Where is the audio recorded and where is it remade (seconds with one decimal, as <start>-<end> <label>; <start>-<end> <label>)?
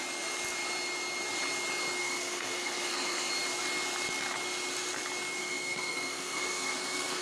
0.0-2.0 recorded; 2.0-3.3 remade; 3.3-5.4 recorded; 5.4-7.2 remade